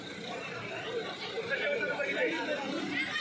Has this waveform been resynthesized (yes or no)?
yes